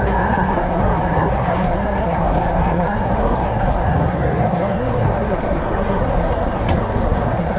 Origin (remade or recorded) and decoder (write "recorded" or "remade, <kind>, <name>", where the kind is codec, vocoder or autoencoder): remade, codec, SNAC